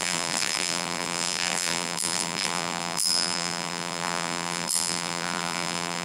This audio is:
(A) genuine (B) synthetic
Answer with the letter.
B